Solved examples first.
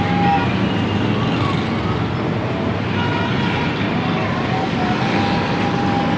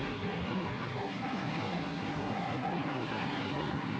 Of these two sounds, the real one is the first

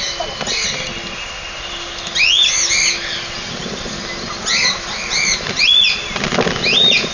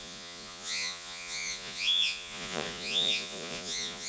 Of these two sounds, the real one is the first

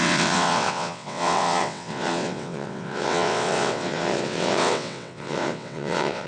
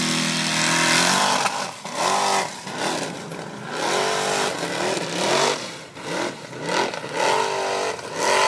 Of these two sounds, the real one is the second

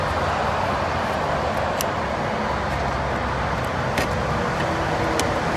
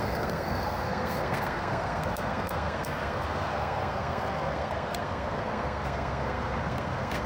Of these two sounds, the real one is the first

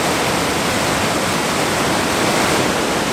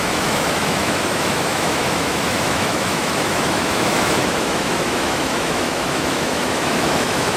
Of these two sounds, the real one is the first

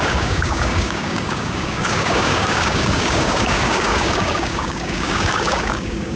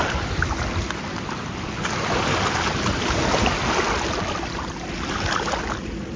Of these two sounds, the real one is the second